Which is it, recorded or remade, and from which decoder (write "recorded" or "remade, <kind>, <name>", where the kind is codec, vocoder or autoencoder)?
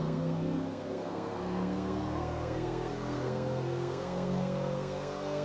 remade, codec, SNAC